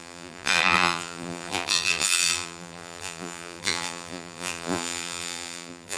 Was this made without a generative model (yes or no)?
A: no